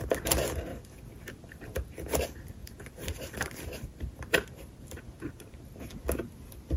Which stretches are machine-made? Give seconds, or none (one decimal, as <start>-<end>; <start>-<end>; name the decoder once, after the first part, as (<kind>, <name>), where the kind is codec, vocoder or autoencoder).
0.7-2.2 (vocoder, BigVGAN v2); 2.6-5.6